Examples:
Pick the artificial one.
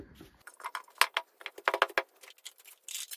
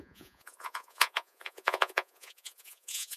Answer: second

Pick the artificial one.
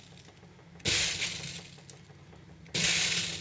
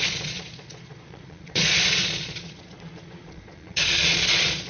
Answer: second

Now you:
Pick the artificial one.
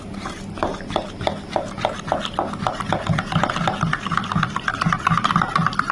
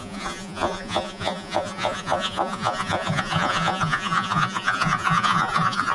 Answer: second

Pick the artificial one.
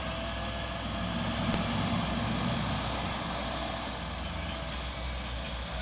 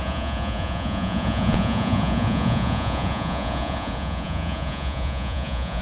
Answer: second